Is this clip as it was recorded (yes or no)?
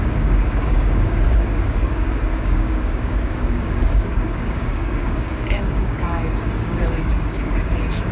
no